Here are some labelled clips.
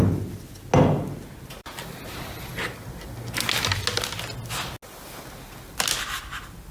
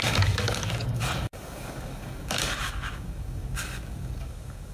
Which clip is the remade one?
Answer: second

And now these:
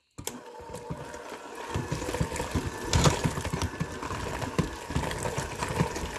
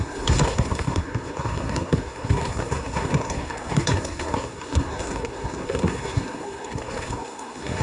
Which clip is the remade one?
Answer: second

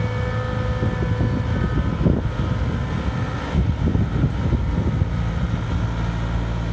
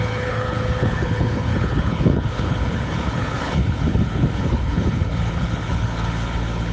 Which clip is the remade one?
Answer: second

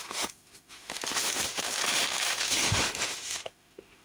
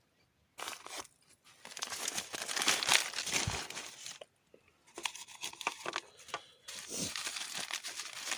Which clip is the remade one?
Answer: first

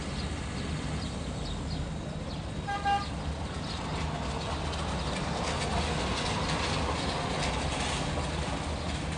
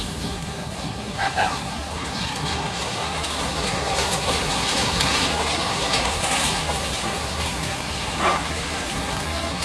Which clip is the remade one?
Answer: second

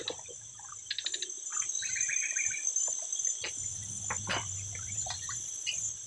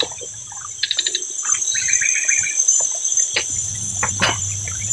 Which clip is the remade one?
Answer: second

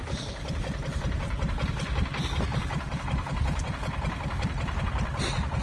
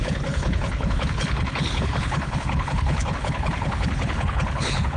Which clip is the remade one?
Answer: second